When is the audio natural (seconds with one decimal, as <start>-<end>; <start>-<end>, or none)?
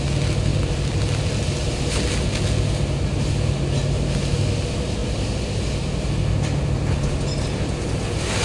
0.0-8.4